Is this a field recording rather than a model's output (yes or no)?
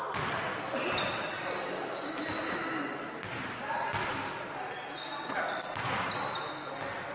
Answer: yes